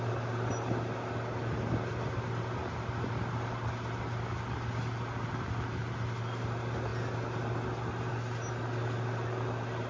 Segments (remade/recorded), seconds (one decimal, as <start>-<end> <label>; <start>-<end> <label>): 0.0-9.9 recorded